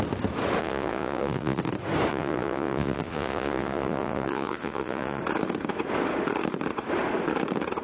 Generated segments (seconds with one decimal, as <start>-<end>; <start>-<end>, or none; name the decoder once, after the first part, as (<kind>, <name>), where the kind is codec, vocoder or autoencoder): 0.6-1.6 (vocoder, Vocos); 2.1-5.2